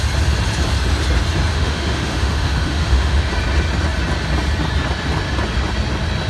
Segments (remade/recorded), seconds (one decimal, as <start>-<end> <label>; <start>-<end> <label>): 0.0-1.5 recorded; 1.5-3.3 remade; 3.3-6.3 recorded